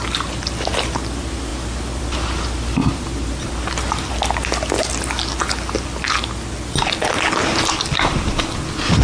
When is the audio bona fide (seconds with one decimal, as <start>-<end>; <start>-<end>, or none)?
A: 0.0-9.0